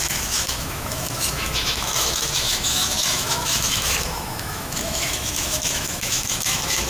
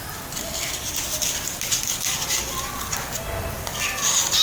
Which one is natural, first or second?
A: second